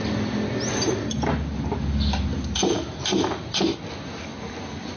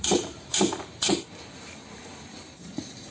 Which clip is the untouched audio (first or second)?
first